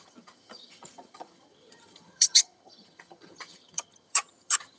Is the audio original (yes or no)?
no